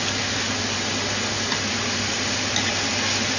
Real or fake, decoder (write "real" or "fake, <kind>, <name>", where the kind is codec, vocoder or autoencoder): real